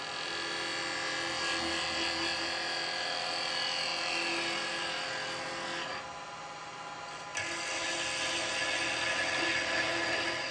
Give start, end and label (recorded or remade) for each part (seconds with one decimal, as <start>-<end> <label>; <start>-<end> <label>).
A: 0.0-10.5 recorded